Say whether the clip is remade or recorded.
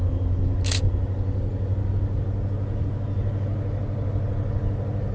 recorded